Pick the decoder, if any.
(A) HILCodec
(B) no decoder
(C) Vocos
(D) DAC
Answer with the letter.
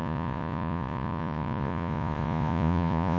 C